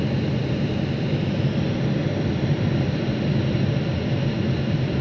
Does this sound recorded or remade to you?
recorded